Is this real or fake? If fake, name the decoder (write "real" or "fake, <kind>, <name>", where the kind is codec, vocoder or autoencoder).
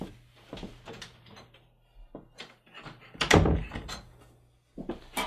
real